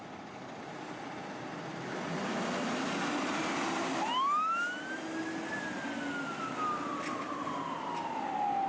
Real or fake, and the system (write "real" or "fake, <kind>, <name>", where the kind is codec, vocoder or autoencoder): real